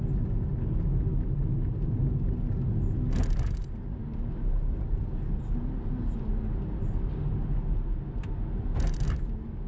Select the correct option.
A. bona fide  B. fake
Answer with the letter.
A